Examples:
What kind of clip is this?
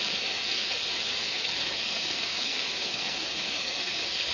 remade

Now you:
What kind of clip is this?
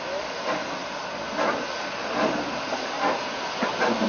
recorded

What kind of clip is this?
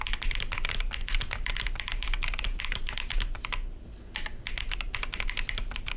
recorded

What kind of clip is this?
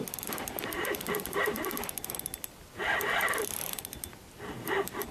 remade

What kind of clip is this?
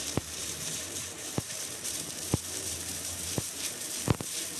remade